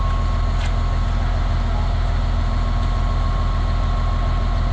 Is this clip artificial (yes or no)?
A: no